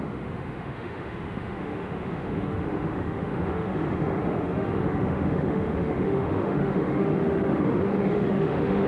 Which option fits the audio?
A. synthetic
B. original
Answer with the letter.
A